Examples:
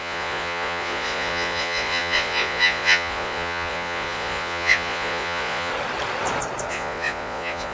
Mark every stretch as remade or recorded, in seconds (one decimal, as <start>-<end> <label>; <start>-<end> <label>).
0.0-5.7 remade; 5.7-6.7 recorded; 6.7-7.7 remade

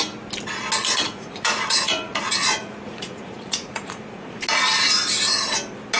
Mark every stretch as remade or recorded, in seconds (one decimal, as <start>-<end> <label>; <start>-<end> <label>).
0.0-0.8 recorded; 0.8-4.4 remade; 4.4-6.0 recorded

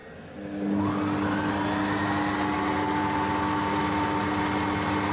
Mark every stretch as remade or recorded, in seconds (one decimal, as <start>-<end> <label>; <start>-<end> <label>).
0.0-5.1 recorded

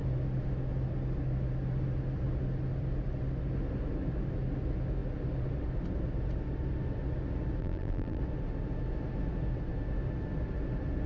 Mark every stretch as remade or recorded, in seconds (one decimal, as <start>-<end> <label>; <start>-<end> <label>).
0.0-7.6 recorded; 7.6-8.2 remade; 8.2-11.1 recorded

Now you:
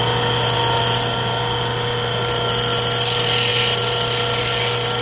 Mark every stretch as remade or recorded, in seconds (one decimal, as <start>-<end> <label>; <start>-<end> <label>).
0.0-5.0 recorded